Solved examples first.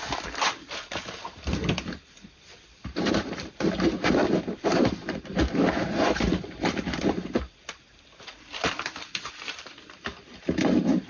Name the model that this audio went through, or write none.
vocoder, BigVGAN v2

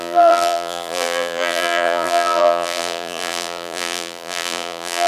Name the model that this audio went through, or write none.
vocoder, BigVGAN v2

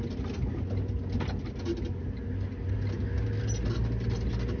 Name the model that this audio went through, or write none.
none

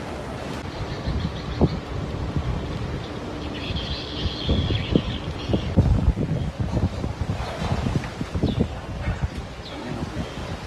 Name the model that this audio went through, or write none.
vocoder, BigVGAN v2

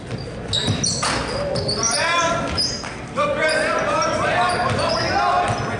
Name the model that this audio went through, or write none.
none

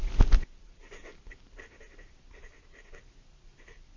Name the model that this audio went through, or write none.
none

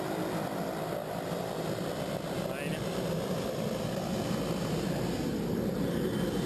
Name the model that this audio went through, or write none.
none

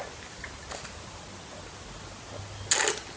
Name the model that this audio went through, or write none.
none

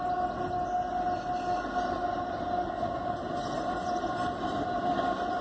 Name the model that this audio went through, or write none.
none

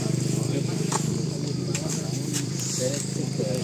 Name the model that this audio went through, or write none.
vocoder, BigVGAN v2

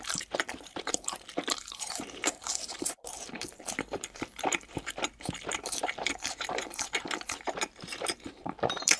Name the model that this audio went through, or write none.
vocoder, BigVGAN v2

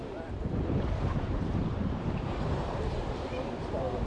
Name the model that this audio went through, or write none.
vocoder, BigVGAN v2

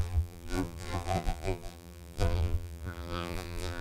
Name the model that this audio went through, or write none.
vocoder, BigVGAN v2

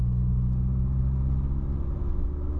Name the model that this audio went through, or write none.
none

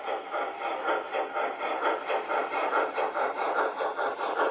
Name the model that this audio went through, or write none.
vocoder, BigVGAN v2